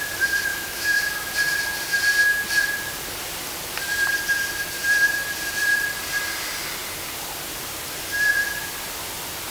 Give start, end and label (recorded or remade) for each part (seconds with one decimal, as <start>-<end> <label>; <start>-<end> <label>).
0.0-0.5 recorded; 0.5-1.3 remade; 1.3-9.5 recorded